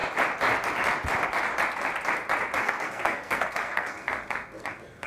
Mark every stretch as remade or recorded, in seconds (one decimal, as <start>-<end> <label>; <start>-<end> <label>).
0.0-2.6 recorded; 2.6-5.1 remade